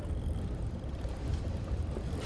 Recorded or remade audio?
recorded